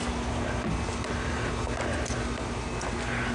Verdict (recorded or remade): recorded